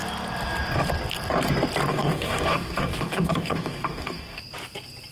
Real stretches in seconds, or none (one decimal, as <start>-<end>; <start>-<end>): 0.0-1.9; 4.4-5.1